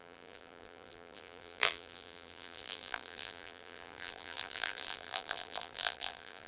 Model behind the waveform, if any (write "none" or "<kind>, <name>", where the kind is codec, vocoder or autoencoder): vocoder, BigVGAN v2